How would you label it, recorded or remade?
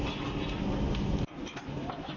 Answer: recorded